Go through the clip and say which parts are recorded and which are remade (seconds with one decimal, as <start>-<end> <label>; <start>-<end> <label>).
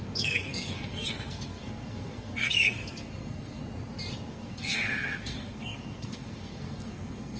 0.0-3.6 remade; 3.6-4.3 recorded; 4.3-7.4 remade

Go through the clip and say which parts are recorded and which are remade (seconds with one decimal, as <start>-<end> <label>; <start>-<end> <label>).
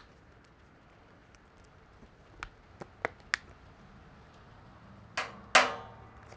0.0-6.4 recorded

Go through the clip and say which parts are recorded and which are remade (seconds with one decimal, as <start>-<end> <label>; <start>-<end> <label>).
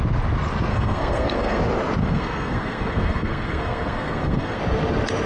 0.0-0.7 recorded; 0.7-1.6 remade; 1.6-2.0 recorded; 2.0-4.6 remade; 4.6-5.3 recorded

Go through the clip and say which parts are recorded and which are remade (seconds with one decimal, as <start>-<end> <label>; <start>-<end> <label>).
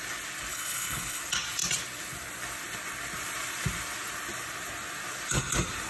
0.0-0.5 recorded; 0.5-1.2 remade; 1.2-5.9 recorded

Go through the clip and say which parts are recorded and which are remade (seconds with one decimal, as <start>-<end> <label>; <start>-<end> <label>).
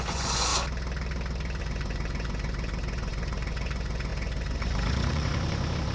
0.0-0.5 remade; 0.5-1.6 recorded; 1.6-5.9 remade